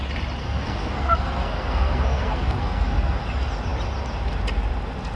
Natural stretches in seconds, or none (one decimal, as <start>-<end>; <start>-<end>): 0.0-0.4; 3.2-5.2